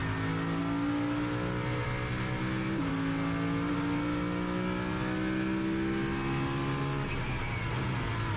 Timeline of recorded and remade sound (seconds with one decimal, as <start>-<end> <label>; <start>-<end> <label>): 0.0-8.4 recorded